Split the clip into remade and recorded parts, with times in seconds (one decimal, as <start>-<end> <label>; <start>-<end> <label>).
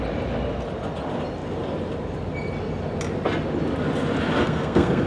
0.0-4.4 recorded; 4.4-5.1 remade